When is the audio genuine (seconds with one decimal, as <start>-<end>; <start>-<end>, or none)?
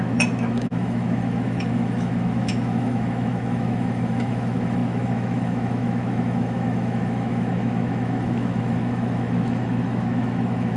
none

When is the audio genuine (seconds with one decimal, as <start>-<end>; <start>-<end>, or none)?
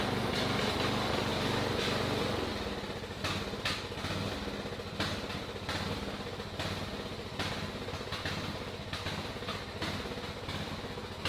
0.0-11.3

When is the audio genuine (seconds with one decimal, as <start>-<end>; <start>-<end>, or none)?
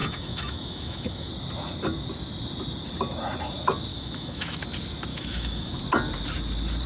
1.3-3.9; 4.6-5.1; 5.8-6.9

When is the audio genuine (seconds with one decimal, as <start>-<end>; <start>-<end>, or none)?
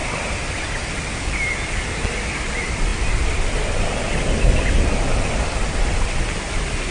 0.0-6.9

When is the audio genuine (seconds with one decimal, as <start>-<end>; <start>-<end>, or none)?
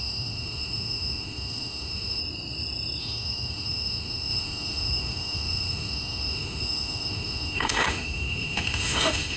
2.2-3.0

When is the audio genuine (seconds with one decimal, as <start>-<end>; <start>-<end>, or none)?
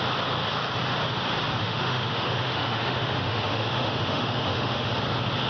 0.0-1.6; 4.9-5.5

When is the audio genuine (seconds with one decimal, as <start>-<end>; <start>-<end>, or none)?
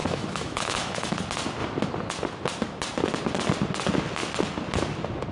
1.1-5.3